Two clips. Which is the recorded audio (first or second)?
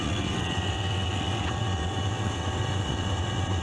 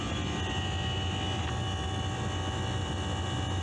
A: second